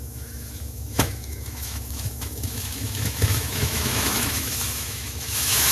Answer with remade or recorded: remade